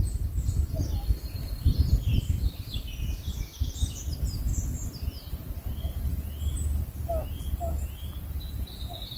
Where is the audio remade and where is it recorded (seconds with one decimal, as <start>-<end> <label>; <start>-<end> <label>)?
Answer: 0.0-9.2 recorded

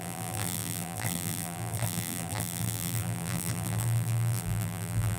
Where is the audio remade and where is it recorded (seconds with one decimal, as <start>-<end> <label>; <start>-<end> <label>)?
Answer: 0.0-5.2 remade

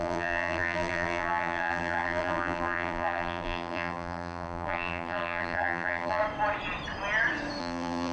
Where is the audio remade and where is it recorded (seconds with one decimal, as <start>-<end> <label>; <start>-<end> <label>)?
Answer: 0.0-6.2 remade; 6.2-7.6 recorded; 7.6-8.1 remade

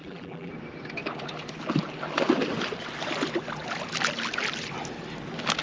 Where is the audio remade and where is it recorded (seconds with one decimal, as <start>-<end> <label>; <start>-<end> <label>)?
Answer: 0.0-0.5 remade; 0.5-5.6 recorded

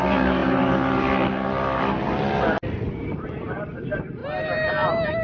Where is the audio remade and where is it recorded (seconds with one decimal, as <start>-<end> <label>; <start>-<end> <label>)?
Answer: 0.0-5.2 recorded

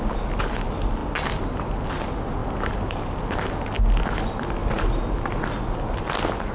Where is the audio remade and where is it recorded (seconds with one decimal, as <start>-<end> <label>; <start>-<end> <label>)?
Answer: 0.0-2.4 recorded; 2.4-3.2 remade; 3.2-4.6 recorded; 4.6-5.4 remade; 5.4-6.5 recorded

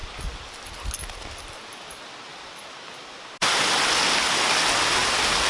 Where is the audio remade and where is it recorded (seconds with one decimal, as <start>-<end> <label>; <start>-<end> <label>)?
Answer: 0.0-1.9 remade; 1.9-2.3 recorded; 2.3-3.2 remade; 3.2-5.0 recorded; 5.0-5.5 remade